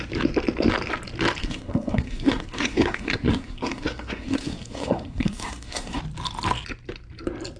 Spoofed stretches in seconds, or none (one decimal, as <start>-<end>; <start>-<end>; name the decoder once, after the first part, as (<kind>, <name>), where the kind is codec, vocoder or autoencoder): 1.4-6.0 (codec, SNAC)